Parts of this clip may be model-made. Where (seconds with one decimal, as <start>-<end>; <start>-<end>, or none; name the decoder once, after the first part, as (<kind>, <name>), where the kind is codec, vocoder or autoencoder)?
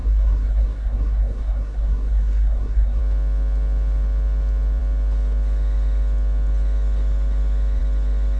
0.0-3.0 (codec, SNAC)